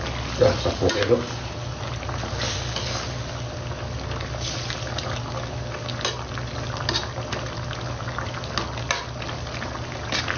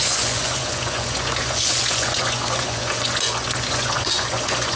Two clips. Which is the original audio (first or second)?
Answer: first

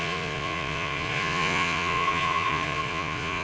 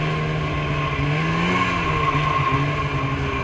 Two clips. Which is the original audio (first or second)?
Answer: second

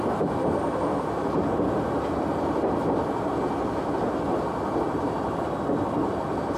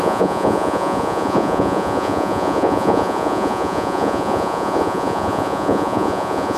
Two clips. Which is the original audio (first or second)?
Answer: first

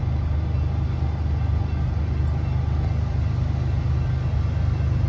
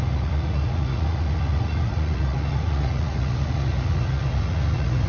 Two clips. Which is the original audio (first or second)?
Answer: first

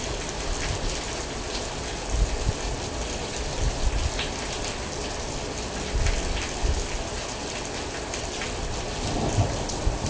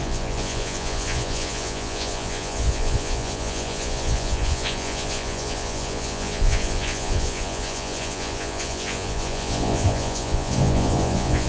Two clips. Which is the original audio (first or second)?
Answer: first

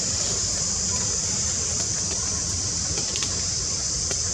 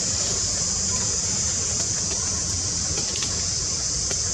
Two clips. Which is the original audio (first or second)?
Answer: first